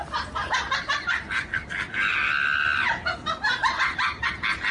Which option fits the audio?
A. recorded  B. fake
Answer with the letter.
A